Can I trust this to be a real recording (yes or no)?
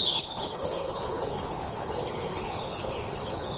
no